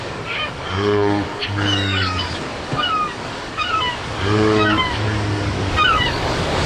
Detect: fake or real fake